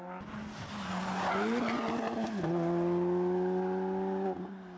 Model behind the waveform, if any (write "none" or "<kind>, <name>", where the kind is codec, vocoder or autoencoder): none